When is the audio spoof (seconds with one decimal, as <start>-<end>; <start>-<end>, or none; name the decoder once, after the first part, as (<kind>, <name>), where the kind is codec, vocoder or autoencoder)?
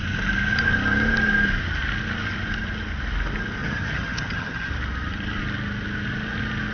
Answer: 3.6-4.7 (vocoder, HiFi-GAN)